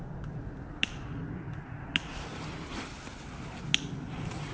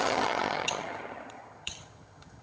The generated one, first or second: second